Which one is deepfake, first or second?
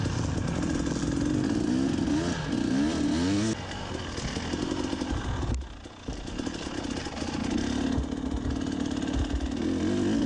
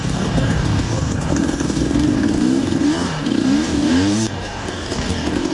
second